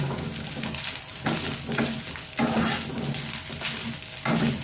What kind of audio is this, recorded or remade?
recorded